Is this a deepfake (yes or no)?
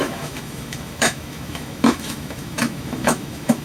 yes